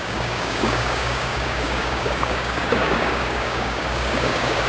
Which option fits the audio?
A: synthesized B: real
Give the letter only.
A